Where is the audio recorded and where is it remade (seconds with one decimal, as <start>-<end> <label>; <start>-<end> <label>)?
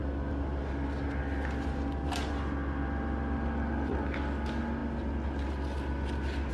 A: 0.0-3.9 remade; 3.9-6.5 recorded